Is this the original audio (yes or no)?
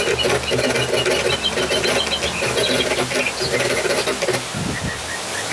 yes